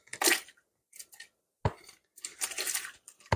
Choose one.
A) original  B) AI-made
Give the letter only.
A